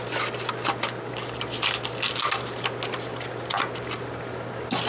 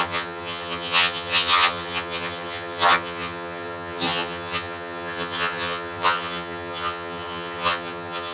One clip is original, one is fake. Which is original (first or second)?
first